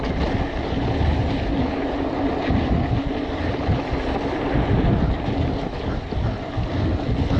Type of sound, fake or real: real